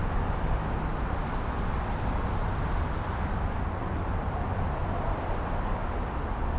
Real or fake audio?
real